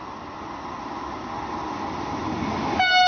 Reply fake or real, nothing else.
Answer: real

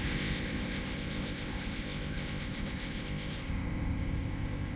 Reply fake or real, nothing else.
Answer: fake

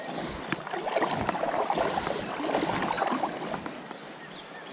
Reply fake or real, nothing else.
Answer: real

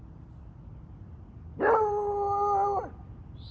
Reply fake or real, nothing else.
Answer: real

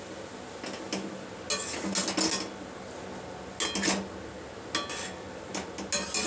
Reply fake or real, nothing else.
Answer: real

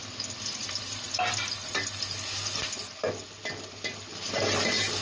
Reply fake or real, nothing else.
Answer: real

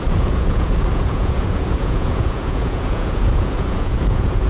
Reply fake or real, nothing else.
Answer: fake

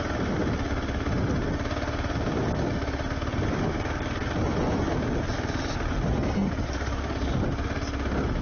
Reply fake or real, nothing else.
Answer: real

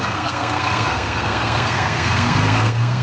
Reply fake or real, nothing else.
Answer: fake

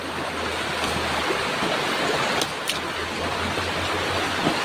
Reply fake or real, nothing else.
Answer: real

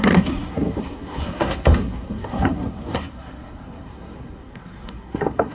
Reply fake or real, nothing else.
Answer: fake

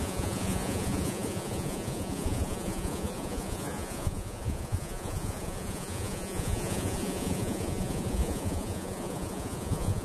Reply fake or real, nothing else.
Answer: fake